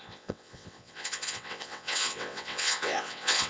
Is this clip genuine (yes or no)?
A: no